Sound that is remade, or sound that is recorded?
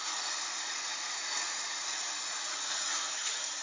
remade